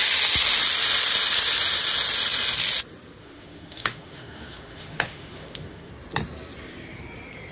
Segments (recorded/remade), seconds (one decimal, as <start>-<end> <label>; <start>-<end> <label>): 0.0-3.2 recorded; 3.2-5.9 remade; 5.9-7.5 recorded